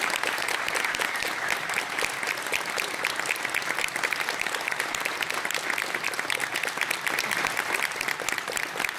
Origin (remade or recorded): recorded